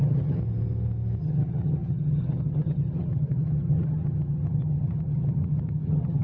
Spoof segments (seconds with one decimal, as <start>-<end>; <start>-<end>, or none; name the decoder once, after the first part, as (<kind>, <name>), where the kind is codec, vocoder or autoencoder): 0.0-0.4 (vocoder, HiFi-GAN); 1.2-6.2